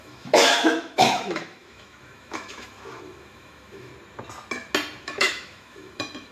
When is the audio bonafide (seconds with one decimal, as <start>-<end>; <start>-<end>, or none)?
3.9-5.0